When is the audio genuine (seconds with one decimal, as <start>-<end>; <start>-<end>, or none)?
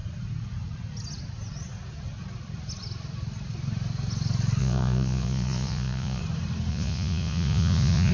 0.0-4.6; 6.2-6.7